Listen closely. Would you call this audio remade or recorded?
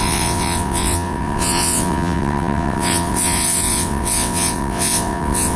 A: remade